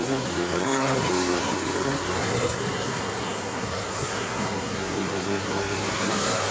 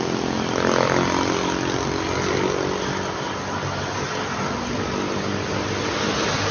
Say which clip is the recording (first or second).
second